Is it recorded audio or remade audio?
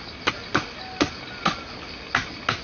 recorded